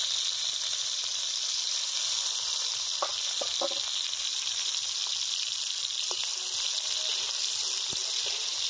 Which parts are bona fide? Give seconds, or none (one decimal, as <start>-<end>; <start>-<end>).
0.0-8.7

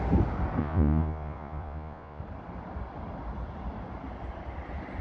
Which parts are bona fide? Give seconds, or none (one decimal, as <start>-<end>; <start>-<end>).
0.0-0.6; 2.2-5.0

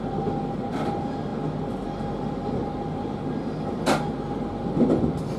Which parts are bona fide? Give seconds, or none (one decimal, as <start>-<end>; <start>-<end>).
0.0-5.4

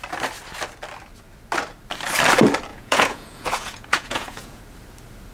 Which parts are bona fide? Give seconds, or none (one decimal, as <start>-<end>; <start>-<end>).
0.0-2.7; 4.6-5.3

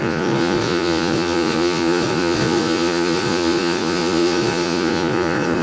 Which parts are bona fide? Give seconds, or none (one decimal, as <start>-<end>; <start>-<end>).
none

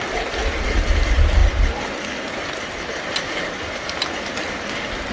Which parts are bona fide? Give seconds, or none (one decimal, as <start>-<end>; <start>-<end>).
0.0-5.1

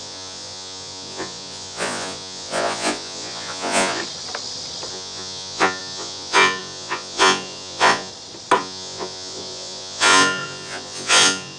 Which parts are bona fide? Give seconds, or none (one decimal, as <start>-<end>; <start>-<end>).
4.0-4.9; 8.1-8.6